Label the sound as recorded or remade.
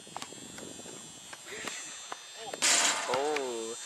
recorded